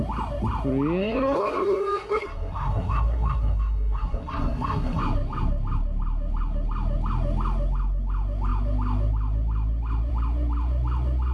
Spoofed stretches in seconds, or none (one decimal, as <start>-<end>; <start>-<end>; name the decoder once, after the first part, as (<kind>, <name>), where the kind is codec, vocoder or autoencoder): 1.0-5.0 (codec, SNAC)